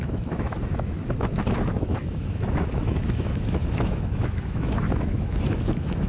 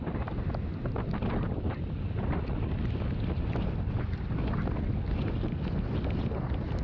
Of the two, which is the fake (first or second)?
first